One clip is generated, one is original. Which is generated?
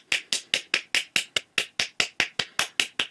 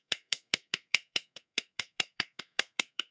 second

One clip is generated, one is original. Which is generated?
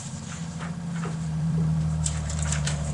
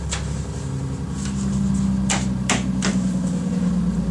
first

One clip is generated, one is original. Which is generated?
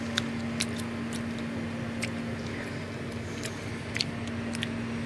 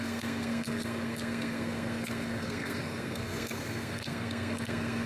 second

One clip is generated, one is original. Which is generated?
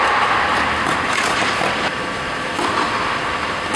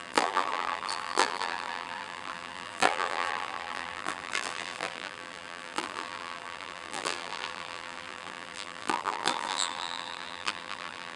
second